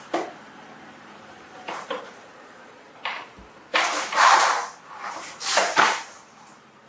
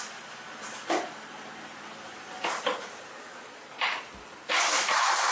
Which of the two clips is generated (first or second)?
first